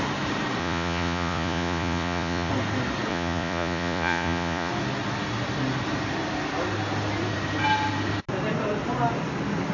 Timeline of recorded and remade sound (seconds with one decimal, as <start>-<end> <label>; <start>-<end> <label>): 0.0-0.6 recorded; 0.6-2.5 remade; 2.5-3.1 recorded; 3.1-4.7 remade; 4.7-9.7 recorded